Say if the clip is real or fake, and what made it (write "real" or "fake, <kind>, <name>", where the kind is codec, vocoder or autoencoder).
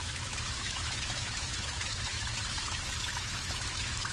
fake, autoencoder, DAC-VAE